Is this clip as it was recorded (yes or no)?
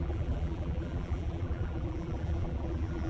no